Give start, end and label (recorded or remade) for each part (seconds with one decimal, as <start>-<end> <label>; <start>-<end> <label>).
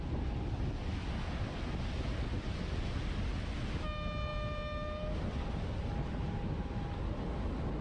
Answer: 0.0-7.8 recorded